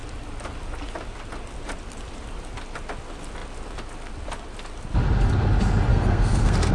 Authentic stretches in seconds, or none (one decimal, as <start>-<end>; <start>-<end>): 0.0-5.9